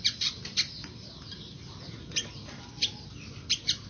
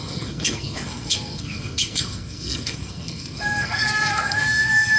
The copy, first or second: second